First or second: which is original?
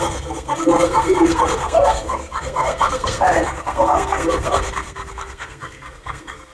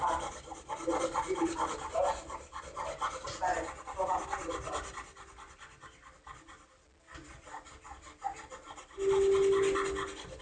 second